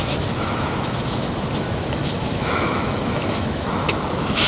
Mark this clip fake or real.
fake